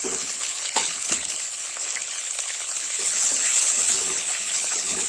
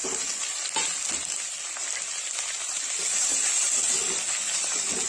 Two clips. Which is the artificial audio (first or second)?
first